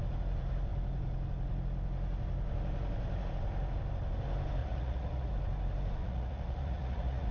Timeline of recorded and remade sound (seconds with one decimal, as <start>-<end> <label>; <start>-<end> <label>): 0.0-4.6 recorded; 4.6-5.3 remade; 5.3-6.0 recorded; 6.0-7.3 remade